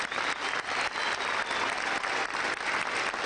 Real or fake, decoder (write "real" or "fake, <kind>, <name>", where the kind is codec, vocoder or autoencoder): real